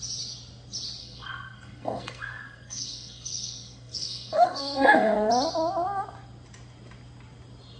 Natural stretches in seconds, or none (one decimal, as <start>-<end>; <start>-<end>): 0.0-1.0; 5.3-7.8